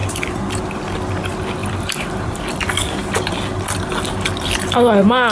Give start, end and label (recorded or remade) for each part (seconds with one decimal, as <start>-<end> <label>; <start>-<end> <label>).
0.0-0.6 remade; 0.6-1.6 recorded; 1.6-3.0 remade; 3.0-5.3 recorded